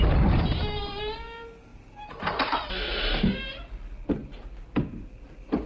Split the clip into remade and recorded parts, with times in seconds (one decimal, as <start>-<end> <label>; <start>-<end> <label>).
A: 0.0-5.7 recorded